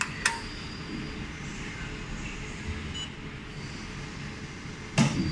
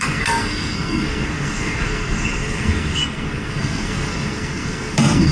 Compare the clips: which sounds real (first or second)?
first